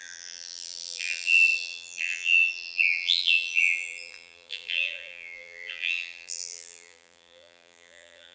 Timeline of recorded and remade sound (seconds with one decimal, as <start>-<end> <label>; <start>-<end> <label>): 0.0-8.3 remade